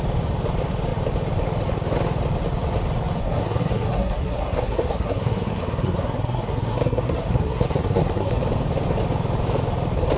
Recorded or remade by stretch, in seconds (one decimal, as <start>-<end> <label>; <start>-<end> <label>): 0.0-3.2 recorded; 3.2-8.4 remade; 8.4-10.2 recorded